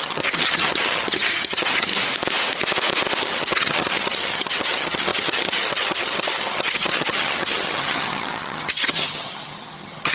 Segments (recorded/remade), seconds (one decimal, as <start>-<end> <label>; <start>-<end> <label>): 0.0-1.9 remade; 1.9-3.2 recorded; 3.2-10.1 remade